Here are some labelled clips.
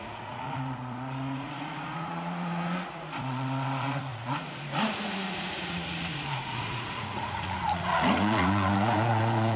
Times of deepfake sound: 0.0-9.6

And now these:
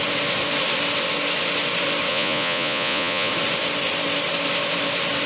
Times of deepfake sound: 2.1-3.3

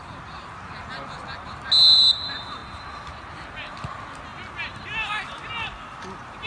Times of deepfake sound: none

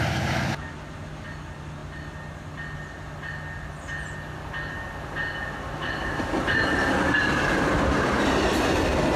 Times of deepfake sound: none